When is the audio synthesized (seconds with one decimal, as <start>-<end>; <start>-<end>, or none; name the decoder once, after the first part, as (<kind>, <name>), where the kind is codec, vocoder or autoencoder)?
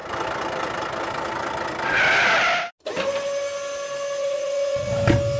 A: 4.2-4.9 (vocoder, Vocos)